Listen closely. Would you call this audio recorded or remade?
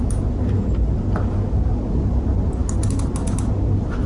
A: recorded